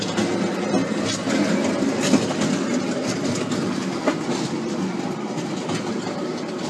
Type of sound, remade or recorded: recorded